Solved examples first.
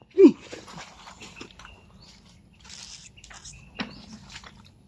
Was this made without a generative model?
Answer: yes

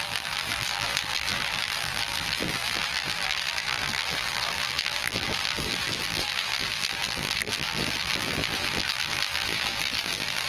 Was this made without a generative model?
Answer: no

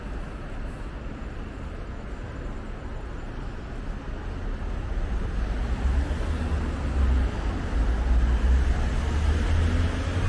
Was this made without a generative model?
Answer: yes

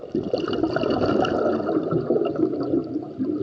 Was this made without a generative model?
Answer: yes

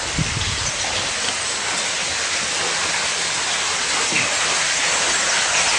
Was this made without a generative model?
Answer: yes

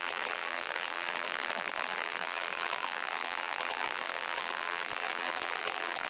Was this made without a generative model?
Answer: no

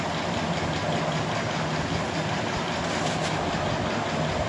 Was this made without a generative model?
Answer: yes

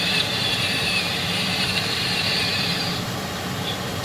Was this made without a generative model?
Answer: no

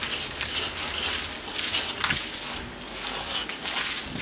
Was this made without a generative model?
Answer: yes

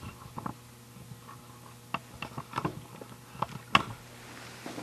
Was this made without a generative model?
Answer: yes